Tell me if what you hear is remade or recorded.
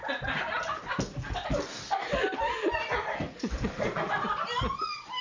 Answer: recorded